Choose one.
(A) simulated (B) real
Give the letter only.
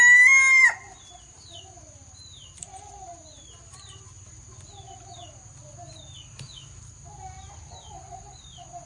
B